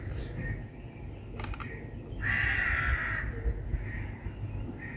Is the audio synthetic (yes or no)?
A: no